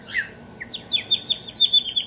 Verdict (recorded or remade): recorded